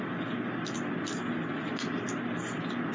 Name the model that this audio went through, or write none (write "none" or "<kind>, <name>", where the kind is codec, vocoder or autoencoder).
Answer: none